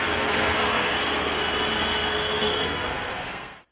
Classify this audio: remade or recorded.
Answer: remade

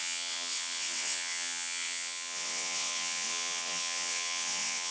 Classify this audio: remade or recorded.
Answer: remade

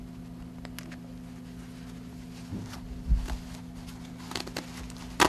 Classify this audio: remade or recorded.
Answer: recorded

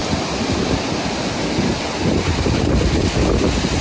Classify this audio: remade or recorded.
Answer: recorded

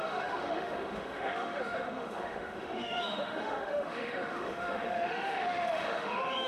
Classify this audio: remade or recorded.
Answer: remade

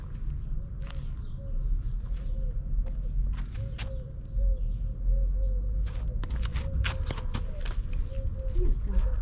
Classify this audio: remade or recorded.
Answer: recorded